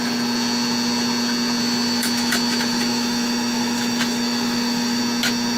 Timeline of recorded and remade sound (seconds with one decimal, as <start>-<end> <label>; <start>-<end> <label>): 0.0-1.6 recorded; 1.6-5.0 remade; 5.0-5.6 recorded